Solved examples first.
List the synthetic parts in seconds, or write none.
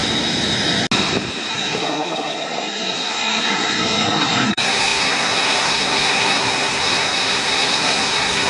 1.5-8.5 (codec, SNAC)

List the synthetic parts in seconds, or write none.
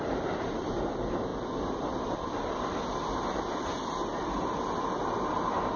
none